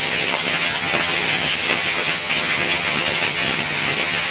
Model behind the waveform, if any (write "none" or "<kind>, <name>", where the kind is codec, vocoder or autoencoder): vocoder, HiFi-GAN